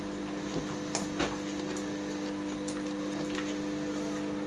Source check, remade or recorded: recorded